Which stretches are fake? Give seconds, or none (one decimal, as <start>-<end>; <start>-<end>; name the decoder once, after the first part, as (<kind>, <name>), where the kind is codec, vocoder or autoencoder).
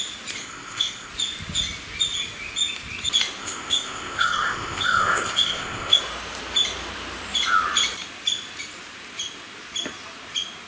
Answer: 0.4-1.1 (codec, ZipCodec); 3.4-6.0